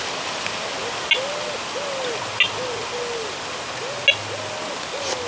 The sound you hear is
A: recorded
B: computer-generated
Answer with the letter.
A